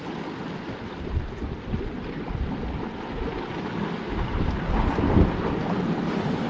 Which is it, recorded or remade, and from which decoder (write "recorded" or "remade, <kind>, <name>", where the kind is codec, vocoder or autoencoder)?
recorded